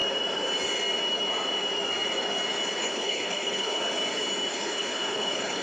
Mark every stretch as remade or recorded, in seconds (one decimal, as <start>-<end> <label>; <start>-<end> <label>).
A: 0.0-2.8 recorded; 2.8-3.8 remade; 3.8-4.5 recorded; 4.5-5.6 remade